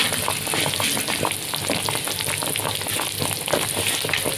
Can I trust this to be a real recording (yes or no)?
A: yes